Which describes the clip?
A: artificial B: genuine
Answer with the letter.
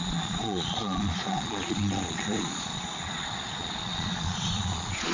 A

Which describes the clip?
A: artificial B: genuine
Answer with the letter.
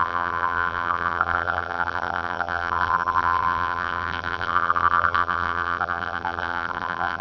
A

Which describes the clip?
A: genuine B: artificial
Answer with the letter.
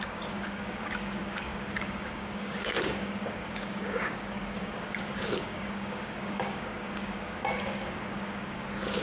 B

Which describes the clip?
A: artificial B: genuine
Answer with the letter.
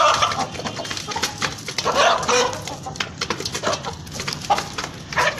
B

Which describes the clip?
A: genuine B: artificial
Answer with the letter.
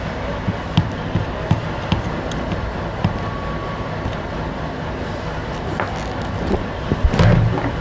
A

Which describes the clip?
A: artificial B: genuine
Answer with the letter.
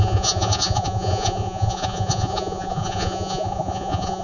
A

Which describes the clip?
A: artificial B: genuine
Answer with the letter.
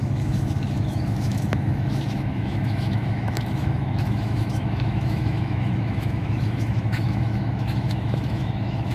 A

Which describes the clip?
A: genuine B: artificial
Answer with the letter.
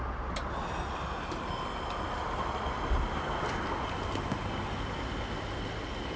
A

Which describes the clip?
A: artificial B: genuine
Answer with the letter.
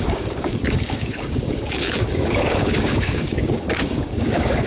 A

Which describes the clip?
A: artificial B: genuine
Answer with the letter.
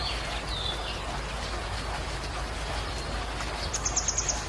B